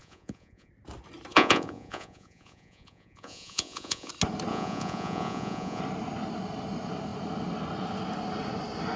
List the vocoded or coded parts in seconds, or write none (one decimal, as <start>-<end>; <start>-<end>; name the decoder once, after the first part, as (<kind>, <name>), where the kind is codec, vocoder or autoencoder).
0.0-0.7 (vocoder, Vocos); 1.3-4.1; 4.5-5.8